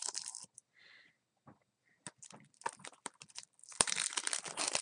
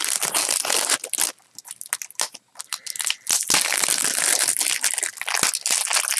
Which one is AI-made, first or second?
first